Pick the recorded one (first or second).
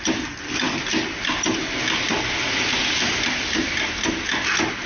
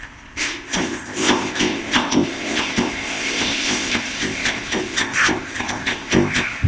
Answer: first